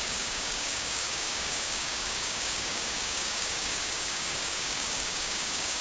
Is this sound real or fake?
fake